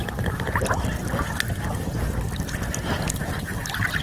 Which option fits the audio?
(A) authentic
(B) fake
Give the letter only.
A